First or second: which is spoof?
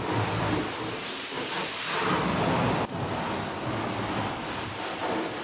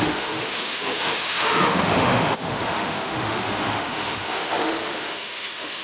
second